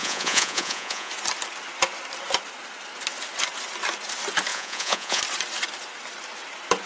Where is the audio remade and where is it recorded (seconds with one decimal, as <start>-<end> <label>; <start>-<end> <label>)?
0.0-1.1 remade; 1.1-4.5 recorded; 4.5-5.2 remade; 5.2-6.9 recorded